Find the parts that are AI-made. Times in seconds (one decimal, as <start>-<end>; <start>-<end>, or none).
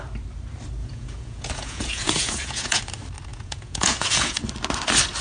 0.8-2.8; 3.3-4.4